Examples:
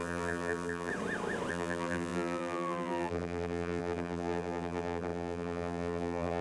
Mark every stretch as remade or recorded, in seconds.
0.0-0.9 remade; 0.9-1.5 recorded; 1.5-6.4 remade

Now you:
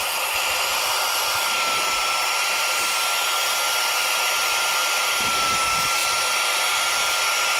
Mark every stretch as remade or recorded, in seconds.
0.0-0.7 recorded; 0.7-5.3 remade; 5.3-7.6 recorded

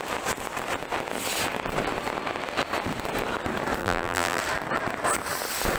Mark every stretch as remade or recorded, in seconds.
0.0-3.8 recorded; 3.8-4.4 remade; 4.4-5.8 recorded

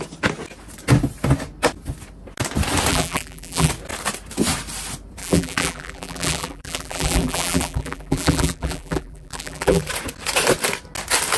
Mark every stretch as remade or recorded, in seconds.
0.0-2.9 recorded; 2.9-3.7 remade; 3.7-5.2 recorded; 5.2-9.8 remade; 9.8-11.4 recorded

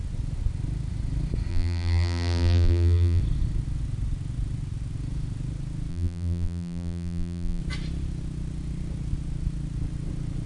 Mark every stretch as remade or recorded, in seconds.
0.0-1.5 recorded; 1.5-3.2 remade; 3.2-5.9 recorded; 5.9-7.6 remade; 7.6-10.5 recorded

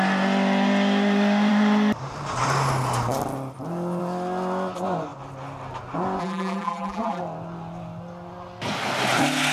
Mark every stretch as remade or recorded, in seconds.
0.0-6.2 recorded; 6.2-7.2 remade; 7.2-9.5 recorded

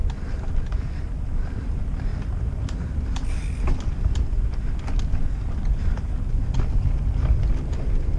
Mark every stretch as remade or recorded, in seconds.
0.0-2.1 recorded; 2.1-3.3 remade; 3.3-8.2 recorded